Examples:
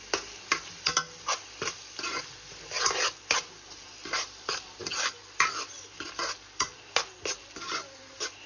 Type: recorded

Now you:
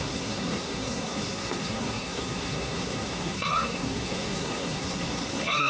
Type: remade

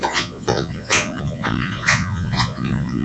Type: remade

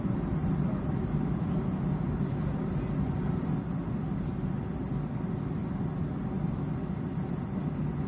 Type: recorded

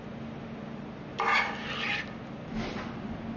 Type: recorded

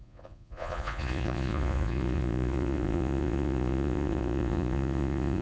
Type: remade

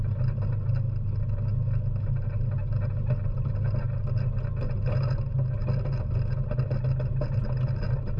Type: recorded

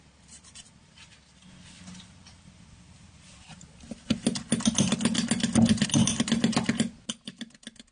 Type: recorded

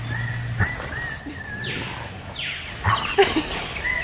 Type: recorded